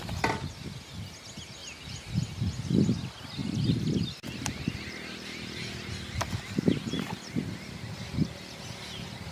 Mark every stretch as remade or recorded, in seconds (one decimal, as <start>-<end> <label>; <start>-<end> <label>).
0.0-3.4 recorded; 3.4-8.0 remade; 8.0-9.3 recorded

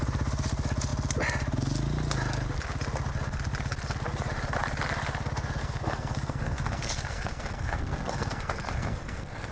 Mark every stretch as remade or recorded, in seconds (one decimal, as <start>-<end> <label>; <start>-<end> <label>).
0.0-5.6 recorded; 5.6-9.5 remade

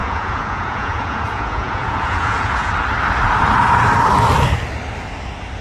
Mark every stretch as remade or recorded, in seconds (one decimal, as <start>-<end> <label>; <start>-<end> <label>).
0.0-2.7 remade; 2.7-5.6 recorded

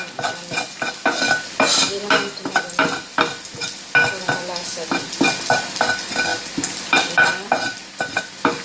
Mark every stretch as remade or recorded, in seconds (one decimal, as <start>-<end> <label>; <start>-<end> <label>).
0.0-8.6 recorded

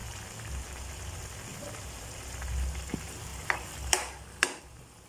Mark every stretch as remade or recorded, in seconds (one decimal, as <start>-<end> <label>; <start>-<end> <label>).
0.0-1.5 recorded; 1.5-2.5 remade; 2.5-3.3 recorded; 3.3-4.6 remade; 4.6-5.1 recorded

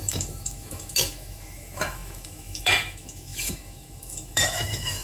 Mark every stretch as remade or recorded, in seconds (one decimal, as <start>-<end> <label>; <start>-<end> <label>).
0.0-5.0 remade

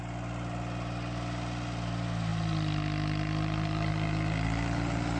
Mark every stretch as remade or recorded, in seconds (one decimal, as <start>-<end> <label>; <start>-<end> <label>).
0.0-5.2 recorded